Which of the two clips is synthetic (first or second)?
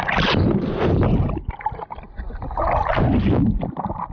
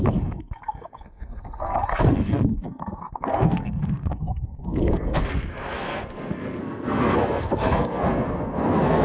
second